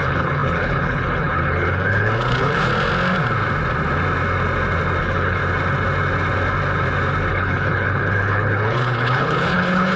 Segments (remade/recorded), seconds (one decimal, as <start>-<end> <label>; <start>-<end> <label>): 0.0-2.7 remade; 2.7-5.0 recorded; 5.0-5.4 remade; 5.4-7.3 recorded; 7.3-10.0 remade